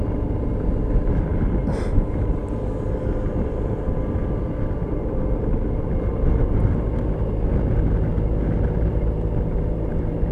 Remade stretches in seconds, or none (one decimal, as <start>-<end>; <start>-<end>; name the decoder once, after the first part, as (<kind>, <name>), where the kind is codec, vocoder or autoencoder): 1.3-6.6 (vocoder, BigVGAN v2)